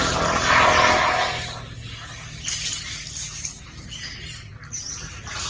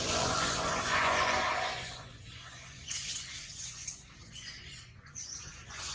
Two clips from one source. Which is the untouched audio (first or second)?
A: first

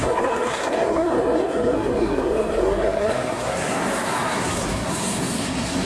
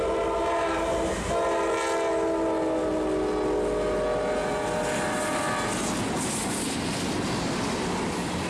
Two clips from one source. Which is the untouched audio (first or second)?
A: second